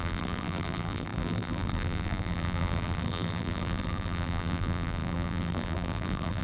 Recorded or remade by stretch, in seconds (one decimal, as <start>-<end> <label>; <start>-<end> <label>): 0.0-6.4 remade